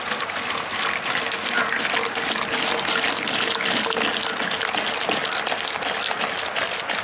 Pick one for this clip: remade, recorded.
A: recorded